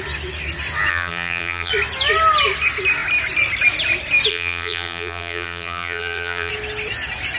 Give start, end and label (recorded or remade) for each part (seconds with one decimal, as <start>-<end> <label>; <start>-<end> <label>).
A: 0.0-0.9 recorded; 0.9-1.7 remade; 1.7-4.3 recorded; 4.3-6.5 remade; 6.5-7.4 recorded